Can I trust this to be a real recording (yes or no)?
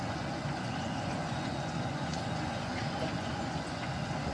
no